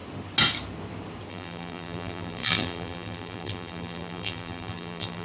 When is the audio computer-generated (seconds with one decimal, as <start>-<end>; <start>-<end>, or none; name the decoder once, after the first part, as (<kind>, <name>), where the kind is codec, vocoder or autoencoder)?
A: 1.3-5.2 (vocoder, BigVGAN v2)